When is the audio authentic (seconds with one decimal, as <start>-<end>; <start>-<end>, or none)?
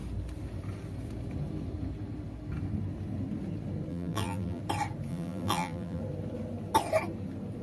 0.0-3.9; 4.6-5.1; 6.0-7.6